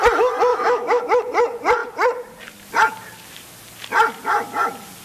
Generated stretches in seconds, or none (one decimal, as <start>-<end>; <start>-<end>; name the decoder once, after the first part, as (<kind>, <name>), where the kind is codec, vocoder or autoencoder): 0.5-1.0 (autoencoder, DAC-VAE)